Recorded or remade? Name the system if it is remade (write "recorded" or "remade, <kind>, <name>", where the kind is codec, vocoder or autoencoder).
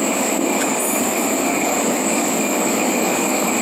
remade, codec, DAC